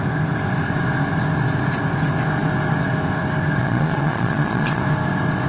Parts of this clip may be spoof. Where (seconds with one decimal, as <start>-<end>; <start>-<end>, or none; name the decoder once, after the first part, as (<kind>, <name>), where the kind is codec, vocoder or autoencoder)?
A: 3.6-4.8 (vocoder, Vocos)